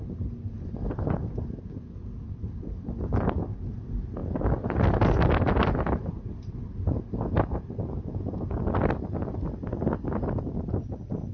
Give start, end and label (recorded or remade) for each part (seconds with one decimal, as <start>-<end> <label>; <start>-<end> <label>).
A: 0.0-11.3 recorded